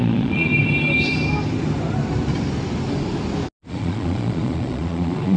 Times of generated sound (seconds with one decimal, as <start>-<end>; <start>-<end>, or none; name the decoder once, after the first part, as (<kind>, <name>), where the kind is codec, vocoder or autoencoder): 0.0-0.5 (vocoder, Vocos); 3.7-5.4